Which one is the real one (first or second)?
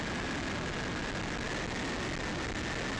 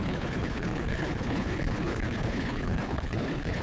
first